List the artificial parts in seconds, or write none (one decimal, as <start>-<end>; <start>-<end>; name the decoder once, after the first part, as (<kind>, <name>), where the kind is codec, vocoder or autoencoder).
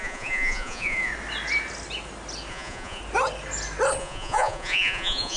0.0-1.1 (vocoder, Vocos); 2.5-3.0; 4.0-5.4